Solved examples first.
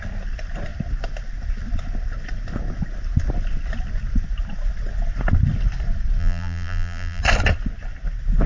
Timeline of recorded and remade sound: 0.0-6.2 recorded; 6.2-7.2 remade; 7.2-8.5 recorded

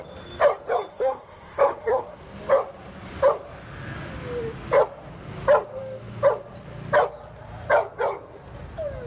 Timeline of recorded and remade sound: 0.0-0.9 recorded; 0.9-2.2 remade; 2.2-9.1 recorded